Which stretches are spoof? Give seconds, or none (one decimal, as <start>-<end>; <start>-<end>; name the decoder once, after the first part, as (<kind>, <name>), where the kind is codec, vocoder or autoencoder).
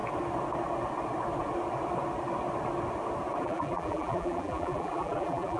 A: 3.4-5.6 (vocoder, BigVGAN v2)